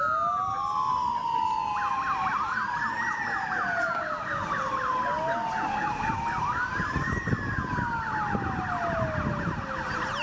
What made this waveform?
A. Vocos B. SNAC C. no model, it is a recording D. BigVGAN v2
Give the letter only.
C